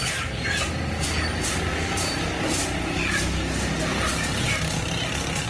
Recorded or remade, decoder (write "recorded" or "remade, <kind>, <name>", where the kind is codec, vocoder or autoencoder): recorded